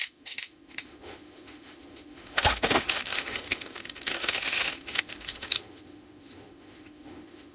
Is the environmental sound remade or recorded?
remade